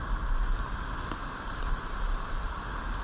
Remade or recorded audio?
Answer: recorded